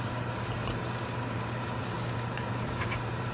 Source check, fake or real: fake